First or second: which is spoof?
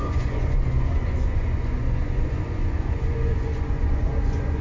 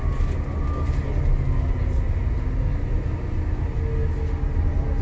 first